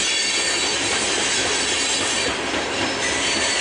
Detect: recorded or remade recorded